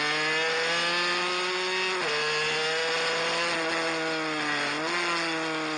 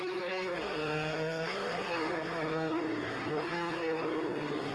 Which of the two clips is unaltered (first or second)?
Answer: first